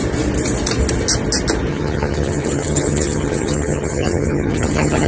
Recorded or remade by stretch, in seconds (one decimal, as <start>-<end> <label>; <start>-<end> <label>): 0.0-1.7 recorded; 1.7-5.1 remade